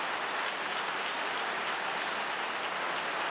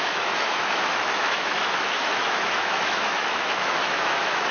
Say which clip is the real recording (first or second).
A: first